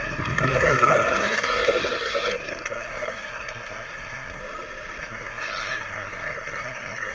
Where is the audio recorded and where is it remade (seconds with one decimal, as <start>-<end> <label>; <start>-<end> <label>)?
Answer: 0.0-4.4 remade; 4.4-5.0 recorded; 5.0-7.1 remade